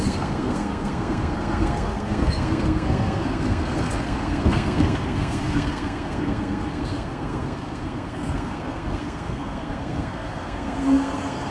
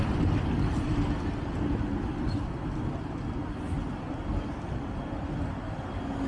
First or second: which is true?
second